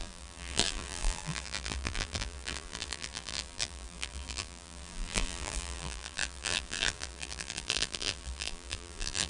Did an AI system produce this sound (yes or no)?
yes